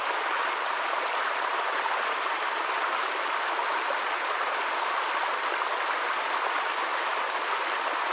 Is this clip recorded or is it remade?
recorded